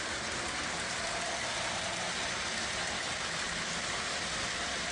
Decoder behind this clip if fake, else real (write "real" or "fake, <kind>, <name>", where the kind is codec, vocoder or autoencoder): real